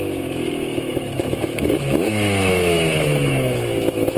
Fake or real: fake